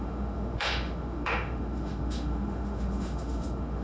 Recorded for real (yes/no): no